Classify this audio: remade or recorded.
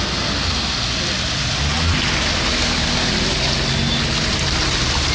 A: recorded